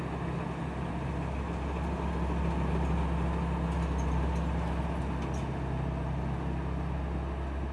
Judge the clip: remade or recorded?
recorded